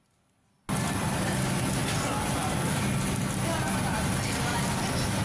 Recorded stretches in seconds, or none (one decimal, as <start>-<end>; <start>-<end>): 0.0-5.2